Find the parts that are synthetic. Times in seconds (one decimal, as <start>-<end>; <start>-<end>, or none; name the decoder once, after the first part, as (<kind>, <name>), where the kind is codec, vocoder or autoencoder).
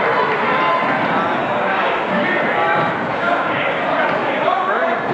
1.4-2.2 (codec, DAC); 3.1-3.8; 4.2-5.1